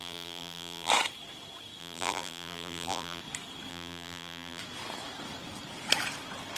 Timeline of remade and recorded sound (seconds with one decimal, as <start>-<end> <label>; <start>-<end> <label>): 0.0-0.9 remade; 0.9-1.8 recorded; 1.8-3.2 remade; 3.2-3.7 recorded; 3.7-4.6 remade; 4.6-6.6 recorded